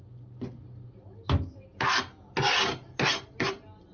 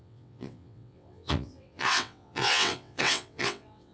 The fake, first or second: second